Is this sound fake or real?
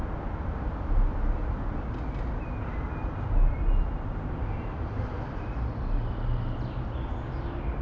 real